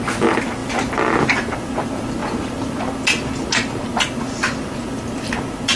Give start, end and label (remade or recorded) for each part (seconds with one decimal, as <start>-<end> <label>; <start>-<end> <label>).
0.0-5.8 recorded